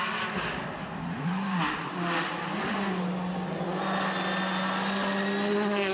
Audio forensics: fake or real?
real